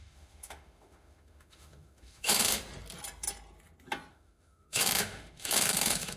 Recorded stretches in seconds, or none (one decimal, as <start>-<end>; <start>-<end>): 2.6-4.1